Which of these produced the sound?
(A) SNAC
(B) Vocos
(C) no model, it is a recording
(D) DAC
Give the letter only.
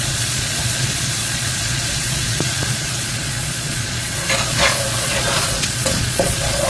B